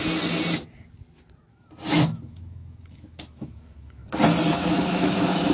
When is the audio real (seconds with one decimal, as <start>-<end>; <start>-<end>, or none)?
0.0-2.1; 4.0-4.5